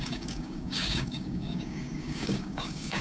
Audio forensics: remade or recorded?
remade